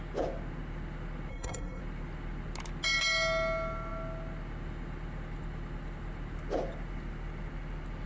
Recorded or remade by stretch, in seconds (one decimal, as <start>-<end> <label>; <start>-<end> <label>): 0.0-1.3 recorded; 1.3-1.8 remade; 1.8-8.1 recorded